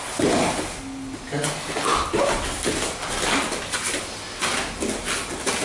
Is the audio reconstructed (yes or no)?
no